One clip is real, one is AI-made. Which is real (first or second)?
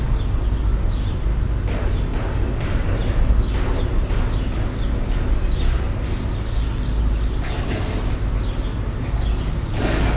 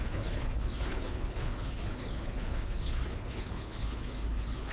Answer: first